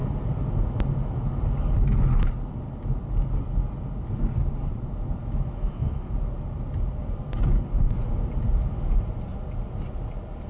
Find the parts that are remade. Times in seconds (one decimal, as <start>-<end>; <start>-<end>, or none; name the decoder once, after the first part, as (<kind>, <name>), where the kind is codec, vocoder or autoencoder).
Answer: 5.2-6.1 (autoencoder, DAC-VAE)